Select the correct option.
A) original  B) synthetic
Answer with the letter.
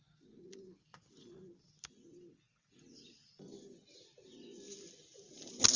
A